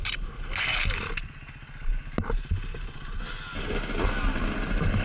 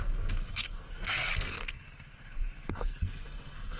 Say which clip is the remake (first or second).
second